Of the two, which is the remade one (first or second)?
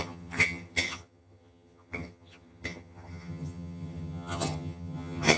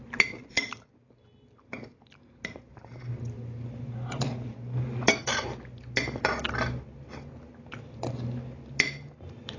first